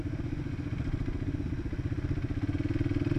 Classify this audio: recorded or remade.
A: recorded